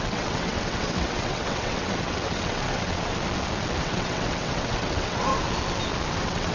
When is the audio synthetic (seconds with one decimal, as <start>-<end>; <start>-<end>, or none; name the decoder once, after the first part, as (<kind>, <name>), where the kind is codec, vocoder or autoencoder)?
0.0-3.1 (vocoder, WaveNeXt); 3.8-5.3; 6.1-6.5